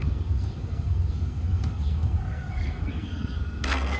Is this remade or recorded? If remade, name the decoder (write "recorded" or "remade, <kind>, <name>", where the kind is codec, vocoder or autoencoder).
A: remade, codec, SNAC